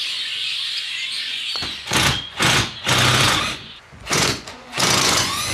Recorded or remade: remade